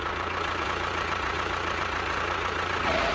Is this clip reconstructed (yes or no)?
yes